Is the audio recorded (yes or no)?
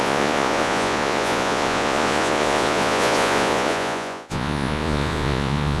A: no